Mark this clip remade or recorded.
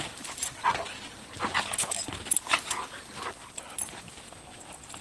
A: remade